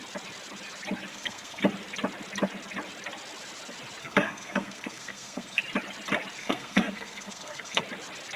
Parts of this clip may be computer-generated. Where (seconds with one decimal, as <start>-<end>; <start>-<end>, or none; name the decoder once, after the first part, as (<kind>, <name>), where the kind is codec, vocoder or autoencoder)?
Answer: 1.1-1.6 (codec, SNAC); 4.0-5.6; 6.4-7.8